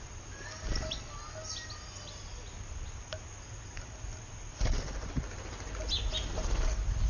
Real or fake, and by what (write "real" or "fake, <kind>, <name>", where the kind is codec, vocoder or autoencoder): real